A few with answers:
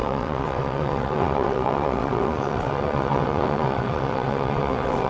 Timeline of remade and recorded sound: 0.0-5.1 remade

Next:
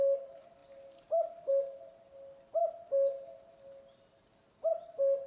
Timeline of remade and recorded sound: 0.0-5.3 recorded

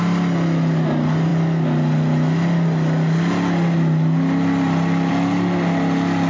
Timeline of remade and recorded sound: 0.0-6.3 recorded